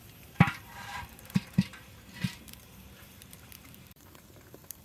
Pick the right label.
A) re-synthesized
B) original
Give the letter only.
A